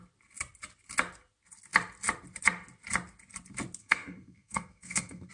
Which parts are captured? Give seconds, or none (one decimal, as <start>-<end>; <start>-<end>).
0.0-3.8